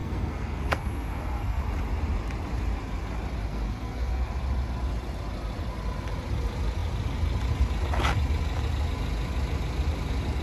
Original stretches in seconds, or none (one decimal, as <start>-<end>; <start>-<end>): 1.6-3.5; 4.3-10.4